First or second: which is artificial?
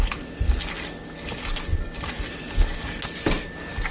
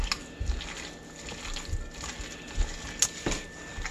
first